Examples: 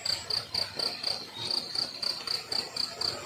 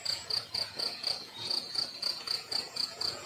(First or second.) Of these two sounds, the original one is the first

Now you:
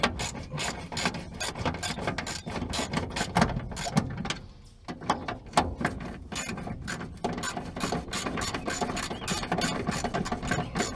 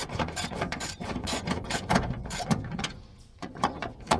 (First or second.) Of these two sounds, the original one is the first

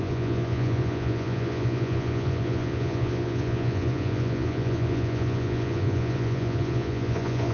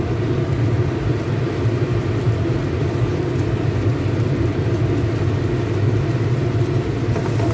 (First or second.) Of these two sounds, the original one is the second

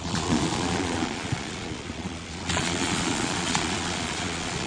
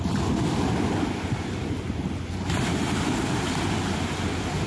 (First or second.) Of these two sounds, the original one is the second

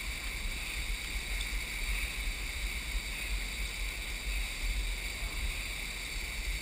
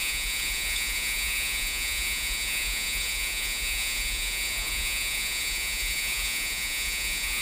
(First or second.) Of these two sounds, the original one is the first